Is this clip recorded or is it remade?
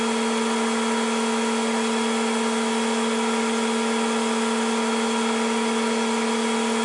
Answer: recorded